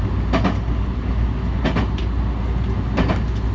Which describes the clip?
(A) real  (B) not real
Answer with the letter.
A